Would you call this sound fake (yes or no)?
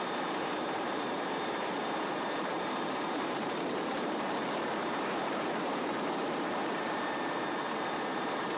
yes